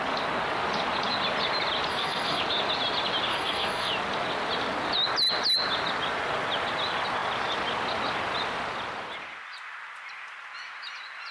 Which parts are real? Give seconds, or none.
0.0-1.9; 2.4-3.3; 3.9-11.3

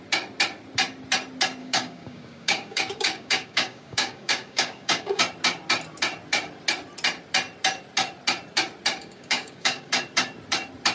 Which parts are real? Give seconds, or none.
0.0-1.6; 5.2-9.0; 9.9-10.9

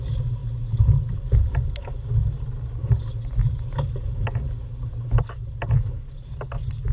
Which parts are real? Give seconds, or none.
0.0-6.9

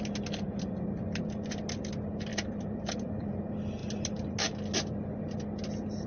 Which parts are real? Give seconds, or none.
0.0-2.3; 3.4-6.1

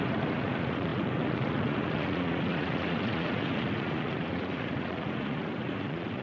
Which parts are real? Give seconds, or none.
none

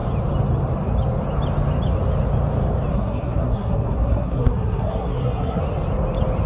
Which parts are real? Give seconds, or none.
0.0-2.9; 5.6-6.5

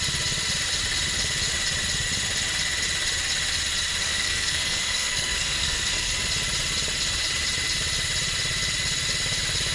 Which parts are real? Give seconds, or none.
0.0-4.0; 6.1-9.7

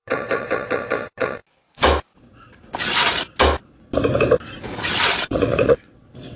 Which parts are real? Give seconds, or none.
1.4-5.2